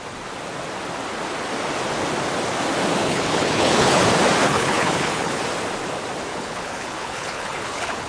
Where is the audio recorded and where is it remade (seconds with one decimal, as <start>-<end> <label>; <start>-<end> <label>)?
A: 0.0-3.0 recorded; 3.0-4.0 remade; 4.0-4.4 recorded; 4.4-5.4 remade; 5.4-6.3 recorded; 6.3-8.1 remade